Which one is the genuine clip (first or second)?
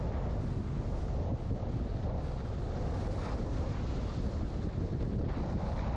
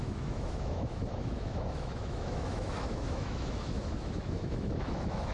first